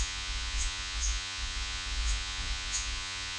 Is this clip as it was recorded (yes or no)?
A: no